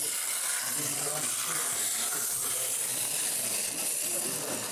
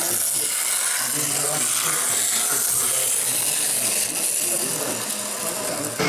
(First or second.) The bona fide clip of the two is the second